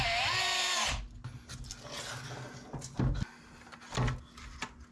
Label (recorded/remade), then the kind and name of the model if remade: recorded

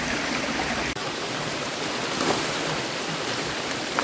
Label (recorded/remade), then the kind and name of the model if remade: remade, vocoder, BigVGAN v2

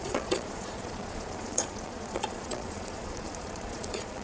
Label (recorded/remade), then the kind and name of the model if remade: remade, vocoder, Vocos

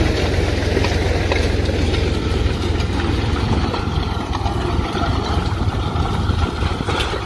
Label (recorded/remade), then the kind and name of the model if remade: recorded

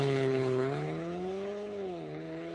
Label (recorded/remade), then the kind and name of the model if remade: remade, codec, HILCodec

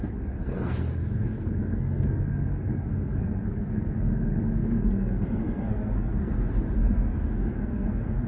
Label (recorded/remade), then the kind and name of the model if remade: remade, codec, SNAC